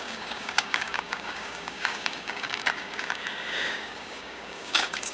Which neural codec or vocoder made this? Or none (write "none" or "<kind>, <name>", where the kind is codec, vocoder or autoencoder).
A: codec, DAC